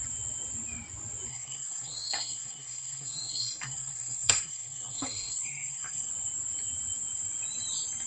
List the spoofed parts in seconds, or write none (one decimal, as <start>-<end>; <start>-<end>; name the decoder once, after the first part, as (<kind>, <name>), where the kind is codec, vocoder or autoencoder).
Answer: 1.3-6.1 (codec, SNAC)